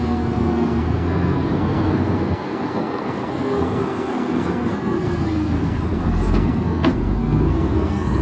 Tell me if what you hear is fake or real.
fake